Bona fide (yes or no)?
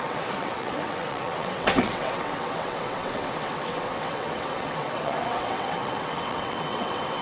no